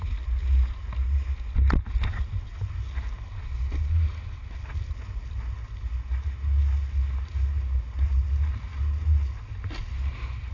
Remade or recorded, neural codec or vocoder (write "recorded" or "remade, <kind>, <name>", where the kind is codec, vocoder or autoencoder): recorded